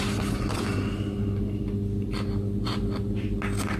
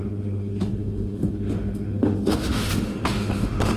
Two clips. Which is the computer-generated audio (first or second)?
second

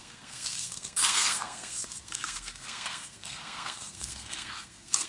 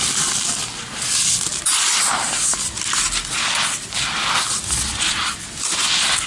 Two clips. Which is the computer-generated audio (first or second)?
first